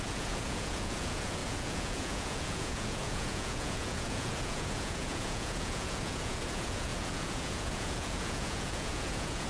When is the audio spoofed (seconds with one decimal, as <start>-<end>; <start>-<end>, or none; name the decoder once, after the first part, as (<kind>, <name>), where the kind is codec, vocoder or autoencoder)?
0.0-9.5 (vocoder, Vocos)